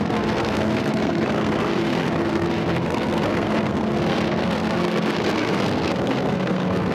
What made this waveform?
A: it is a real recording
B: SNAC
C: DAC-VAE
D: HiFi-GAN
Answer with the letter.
B